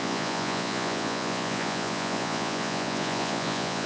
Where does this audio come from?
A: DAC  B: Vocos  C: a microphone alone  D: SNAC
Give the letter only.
B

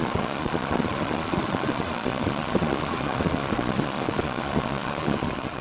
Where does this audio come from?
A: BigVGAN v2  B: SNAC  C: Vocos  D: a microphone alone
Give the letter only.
C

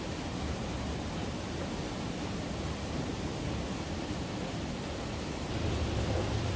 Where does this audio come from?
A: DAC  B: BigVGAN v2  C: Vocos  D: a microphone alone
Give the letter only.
D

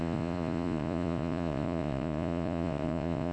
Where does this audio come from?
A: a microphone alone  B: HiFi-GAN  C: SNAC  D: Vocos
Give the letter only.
D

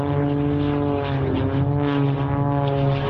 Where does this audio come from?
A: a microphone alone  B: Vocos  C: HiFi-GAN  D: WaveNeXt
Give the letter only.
A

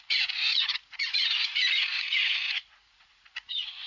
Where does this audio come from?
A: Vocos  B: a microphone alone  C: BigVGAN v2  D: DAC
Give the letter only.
A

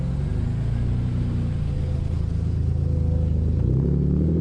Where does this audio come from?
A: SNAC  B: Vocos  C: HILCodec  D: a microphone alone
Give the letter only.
D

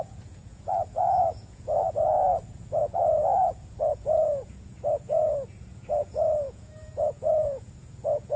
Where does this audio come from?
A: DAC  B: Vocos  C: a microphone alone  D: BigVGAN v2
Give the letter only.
B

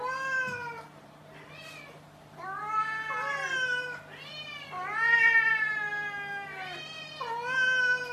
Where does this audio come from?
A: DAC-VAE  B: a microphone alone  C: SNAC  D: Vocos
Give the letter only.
B